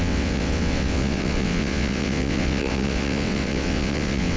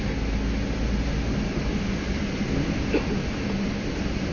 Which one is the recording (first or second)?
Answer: second